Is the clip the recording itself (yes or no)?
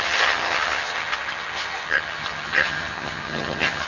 no